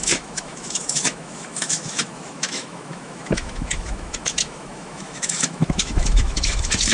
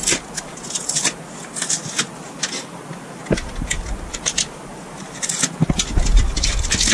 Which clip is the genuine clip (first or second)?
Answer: second